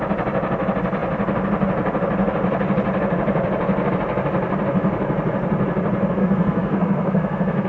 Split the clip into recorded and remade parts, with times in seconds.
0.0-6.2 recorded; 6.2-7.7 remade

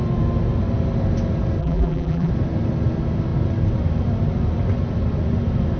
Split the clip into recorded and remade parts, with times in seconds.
0.0-1.6 recorded; 1.6-2.3 remade; 2.3-5.8 recorded

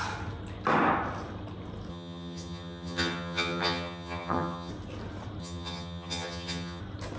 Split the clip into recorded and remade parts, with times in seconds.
0.0-1.9 recorded; 1.9-4.7 remade; 4.7-5.4 recorded; 5.4-6.8 remade; 6.8-7.2 recorded

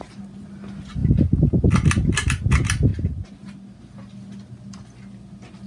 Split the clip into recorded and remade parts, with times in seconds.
0.0-5.7 recorded

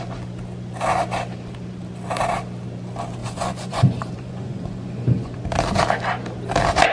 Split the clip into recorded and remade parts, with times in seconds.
0.0-3.2 recorded; 3.2-5.4 remade; 5.4-6.9 recorded

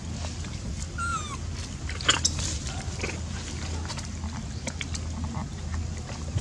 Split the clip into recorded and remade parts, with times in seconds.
0.0-6.4 recorded

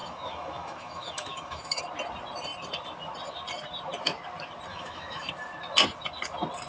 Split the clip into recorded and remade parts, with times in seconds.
0.0-1.8 remade; 1.8-4.7 recorded; 4.7-5.3 remade; 5.3-6.7 recorded